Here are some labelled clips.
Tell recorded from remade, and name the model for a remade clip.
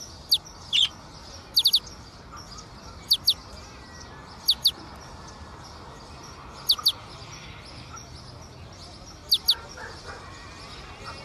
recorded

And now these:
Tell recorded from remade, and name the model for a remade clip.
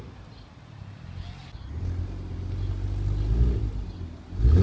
recorded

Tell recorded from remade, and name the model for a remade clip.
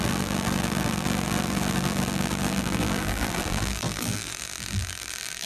remade, vocoder, BigVGAN v2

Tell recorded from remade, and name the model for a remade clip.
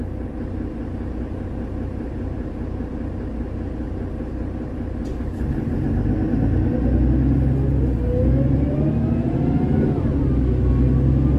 recorded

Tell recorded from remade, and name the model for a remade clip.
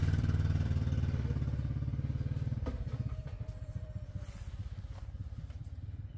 remade, vocoder, BigVGAN v2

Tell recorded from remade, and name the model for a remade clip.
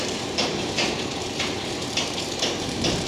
remade, vocoder, BigVGAN v2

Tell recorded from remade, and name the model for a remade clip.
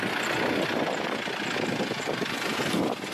recorded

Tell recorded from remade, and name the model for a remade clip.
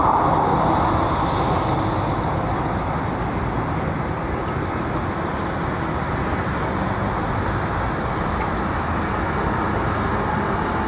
recorded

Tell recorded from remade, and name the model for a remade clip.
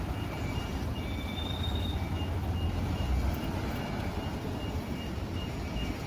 remade, vocoder, BigVGAN v2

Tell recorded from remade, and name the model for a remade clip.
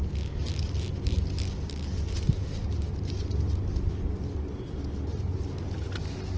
recorded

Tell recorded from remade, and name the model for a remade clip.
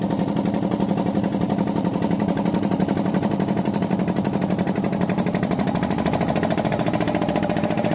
remade, vocoder, BigVGAN v2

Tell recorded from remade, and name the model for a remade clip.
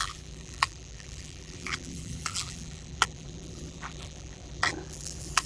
remade, vocoder, BigVGAN v2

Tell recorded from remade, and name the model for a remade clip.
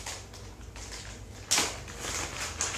recorded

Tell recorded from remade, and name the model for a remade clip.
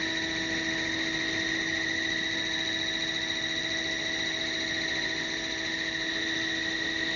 recorded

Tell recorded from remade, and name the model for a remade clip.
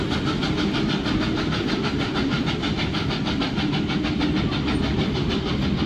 recorded